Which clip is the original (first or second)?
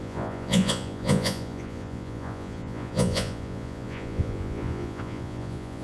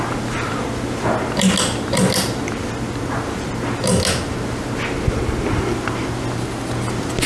second